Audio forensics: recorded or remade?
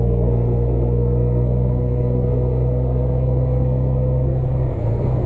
remade